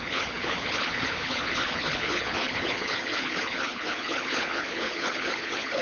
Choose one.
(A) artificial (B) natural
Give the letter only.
A